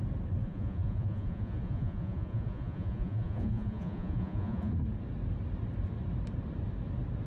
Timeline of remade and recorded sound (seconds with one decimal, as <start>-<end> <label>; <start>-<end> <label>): 0.0-0.4 recorded; 0.4-4.7 remade; 4.7-7.3 recorded